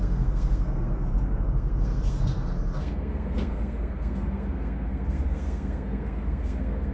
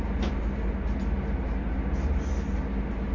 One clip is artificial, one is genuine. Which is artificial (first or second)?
first